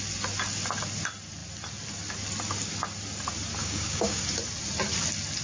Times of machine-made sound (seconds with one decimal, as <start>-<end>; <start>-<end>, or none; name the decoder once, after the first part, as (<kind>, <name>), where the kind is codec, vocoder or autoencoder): 3.6-4.2 (codec, DAC)